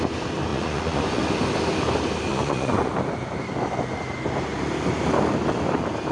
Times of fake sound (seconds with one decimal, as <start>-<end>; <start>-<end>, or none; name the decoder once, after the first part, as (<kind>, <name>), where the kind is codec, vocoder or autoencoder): 0.5-1.2 (vocoder, Vocos); 2.3-2.9